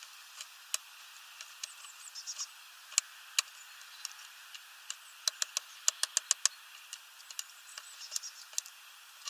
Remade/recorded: recorded